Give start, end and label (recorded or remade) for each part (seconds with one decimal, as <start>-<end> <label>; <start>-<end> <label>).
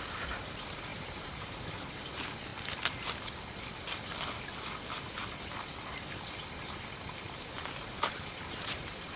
0.0-2.5 remade; 2.5-7.6 recorded; 7.6-9.2 remade